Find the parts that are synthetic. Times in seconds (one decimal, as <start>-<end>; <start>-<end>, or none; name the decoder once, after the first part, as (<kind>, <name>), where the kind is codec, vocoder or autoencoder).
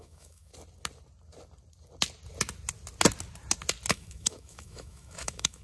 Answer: 0.0-0.5 (autoencoder, DAC-VAE); 3.9-5.6